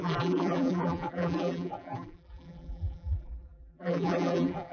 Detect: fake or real fake